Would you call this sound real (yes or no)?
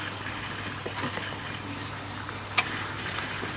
yes